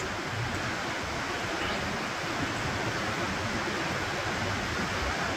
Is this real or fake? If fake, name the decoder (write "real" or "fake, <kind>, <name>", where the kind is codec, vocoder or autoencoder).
real